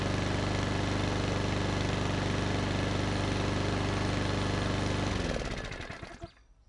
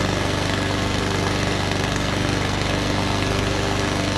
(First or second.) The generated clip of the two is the second